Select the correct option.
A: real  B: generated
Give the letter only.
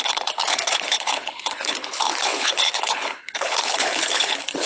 B